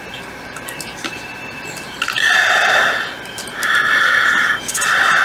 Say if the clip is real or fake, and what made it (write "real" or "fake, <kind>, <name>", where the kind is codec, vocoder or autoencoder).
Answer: real